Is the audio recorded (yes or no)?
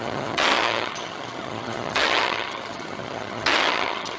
no